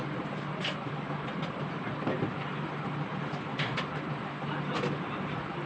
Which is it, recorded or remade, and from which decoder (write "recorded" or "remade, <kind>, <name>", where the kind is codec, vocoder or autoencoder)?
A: recorded